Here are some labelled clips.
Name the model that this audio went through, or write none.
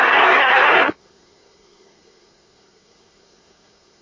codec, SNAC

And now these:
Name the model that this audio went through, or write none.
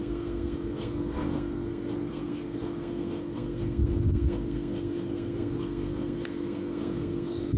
codec, SNAC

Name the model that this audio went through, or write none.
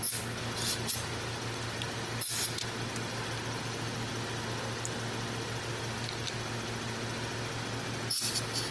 none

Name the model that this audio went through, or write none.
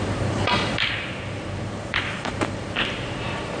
vocoder, BigVGAN v2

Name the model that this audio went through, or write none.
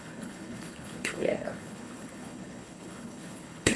codec, HILCodec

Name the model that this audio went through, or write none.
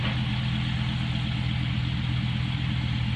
none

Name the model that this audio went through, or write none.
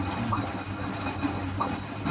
none